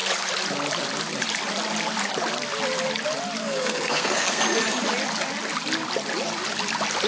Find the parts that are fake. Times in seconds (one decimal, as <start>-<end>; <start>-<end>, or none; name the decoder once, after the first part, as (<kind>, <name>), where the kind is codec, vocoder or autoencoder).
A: 3.4-4.4 (codec, SNAC)